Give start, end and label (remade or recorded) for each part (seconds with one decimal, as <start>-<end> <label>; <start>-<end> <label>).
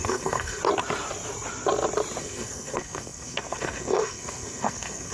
0.0-0.6 remade; 0.6-2.2 recorded; 2.2-5.1 remade